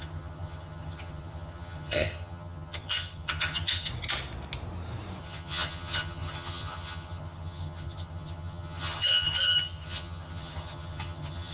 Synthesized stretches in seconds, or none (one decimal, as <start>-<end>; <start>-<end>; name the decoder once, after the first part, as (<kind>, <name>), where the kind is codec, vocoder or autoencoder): 0.0-3.9 (vocoder, HiFi-GAN); 5.2-11.5